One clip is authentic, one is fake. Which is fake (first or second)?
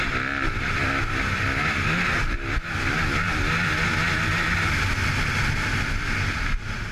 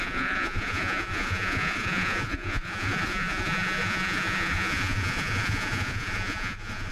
second